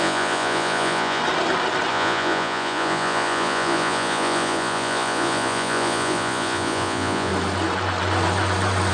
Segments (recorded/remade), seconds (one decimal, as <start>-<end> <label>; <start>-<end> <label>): 0.0-1.2 remade; 1.2-1.9 recorded; 1.9-7.3 remade; 7.3-8.9 recorded